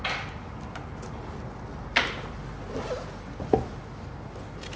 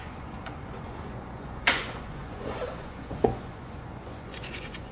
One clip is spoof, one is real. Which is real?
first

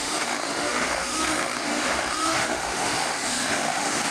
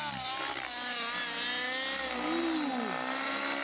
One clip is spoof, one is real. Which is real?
second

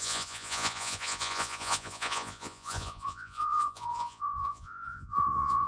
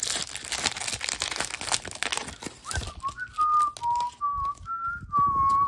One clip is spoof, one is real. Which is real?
second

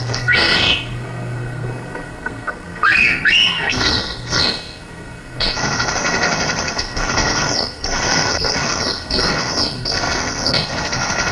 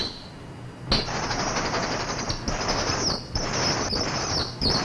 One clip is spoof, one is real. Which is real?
second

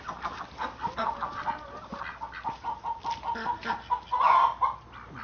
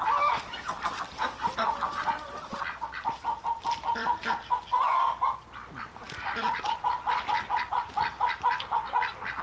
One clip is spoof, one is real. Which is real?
first